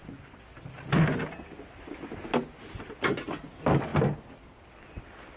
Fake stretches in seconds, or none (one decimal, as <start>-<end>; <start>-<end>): none